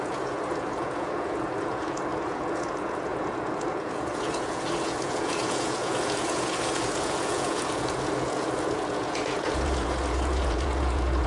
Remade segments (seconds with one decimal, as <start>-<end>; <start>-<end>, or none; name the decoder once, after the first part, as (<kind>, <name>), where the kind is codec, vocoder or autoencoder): 0.0-11.3 (vocoder, Vocos)